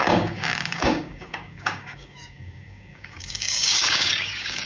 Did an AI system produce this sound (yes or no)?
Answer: yes